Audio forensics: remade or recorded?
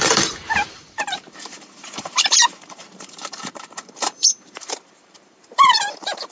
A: remade